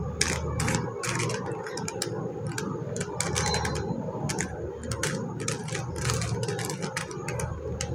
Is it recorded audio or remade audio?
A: recorded